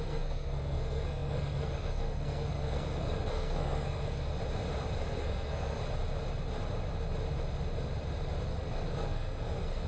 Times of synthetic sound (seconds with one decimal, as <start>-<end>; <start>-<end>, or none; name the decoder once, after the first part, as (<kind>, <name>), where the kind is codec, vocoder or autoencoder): 0.0-4.3 (codec, SNAC); 5.0-5.8; 8.5-9.9